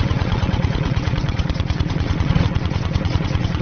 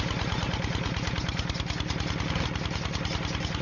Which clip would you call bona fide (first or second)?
second